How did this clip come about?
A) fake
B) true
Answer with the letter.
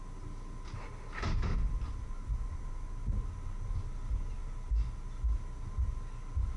B